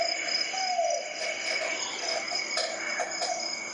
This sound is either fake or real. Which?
real